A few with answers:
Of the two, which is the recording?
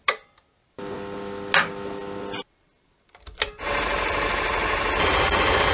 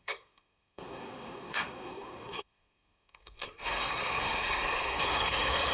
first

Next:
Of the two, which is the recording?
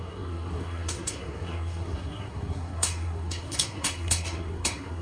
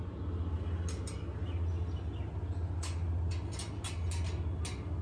second